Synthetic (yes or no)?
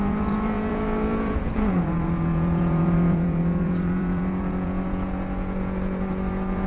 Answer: yes